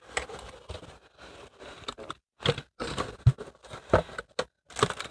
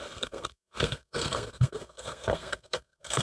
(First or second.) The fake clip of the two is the second